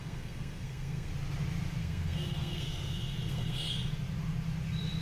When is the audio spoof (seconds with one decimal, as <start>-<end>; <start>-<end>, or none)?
0.0-1.1; 1.8-3.9